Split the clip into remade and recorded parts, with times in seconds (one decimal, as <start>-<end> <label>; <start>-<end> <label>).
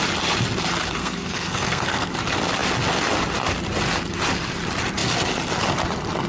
0.0-1.0 recorded; 1.0-2.1 remade; 2.1-6.3 recorded